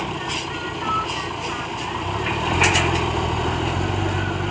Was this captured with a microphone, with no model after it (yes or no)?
yes